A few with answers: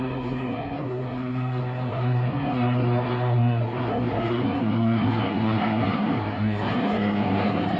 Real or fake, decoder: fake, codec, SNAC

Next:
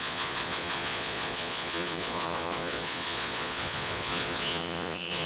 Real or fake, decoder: fake, vocoder, Vocos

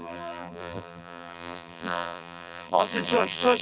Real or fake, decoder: fake, vocoder, BigVGAN v2